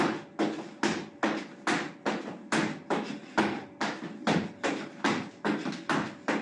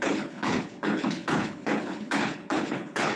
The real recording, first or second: first